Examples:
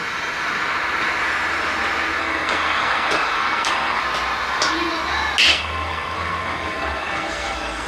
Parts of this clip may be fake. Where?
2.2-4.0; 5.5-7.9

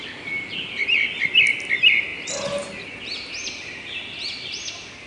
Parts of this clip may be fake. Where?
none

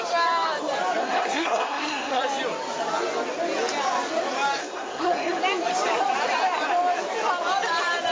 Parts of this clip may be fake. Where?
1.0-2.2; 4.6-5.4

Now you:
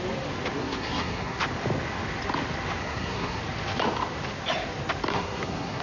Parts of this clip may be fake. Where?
0.6-1.4; 2.8-3.4; 5.1-5.8

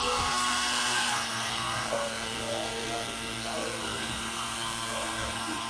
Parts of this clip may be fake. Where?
0.0-5.7

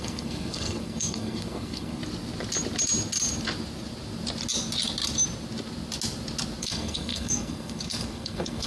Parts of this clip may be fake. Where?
0.0-2.0; 6.6-8.7

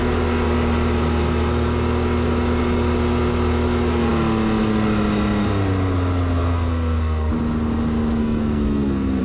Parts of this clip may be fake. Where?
6.4-7.3; 8.2-9.2